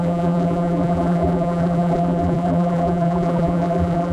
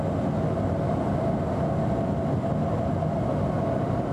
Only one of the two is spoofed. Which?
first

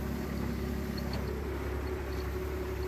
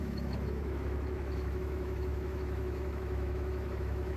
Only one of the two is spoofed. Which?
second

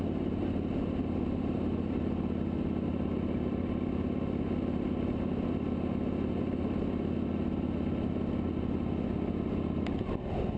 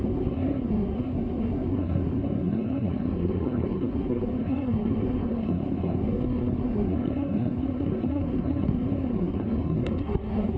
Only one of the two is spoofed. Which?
second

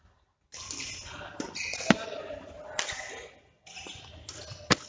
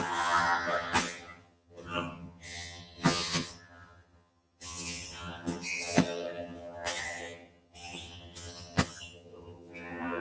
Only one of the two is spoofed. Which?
second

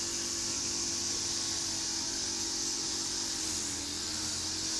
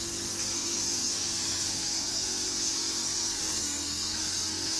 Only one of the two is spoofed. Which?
second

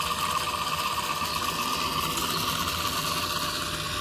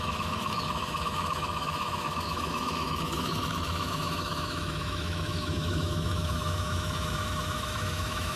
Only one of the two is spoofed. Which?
second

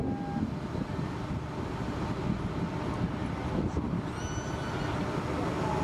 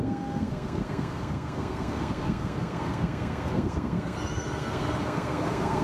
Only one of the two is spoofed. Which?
second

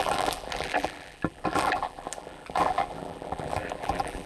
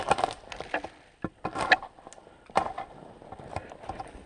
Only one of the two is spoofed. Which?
first